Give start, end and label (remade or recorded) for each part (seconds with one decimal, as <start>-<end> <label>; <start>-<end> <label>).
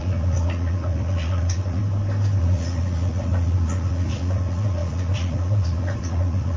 0.0-1.8 remade; 1.8-2.4 recorded; 2.4-6.6 remade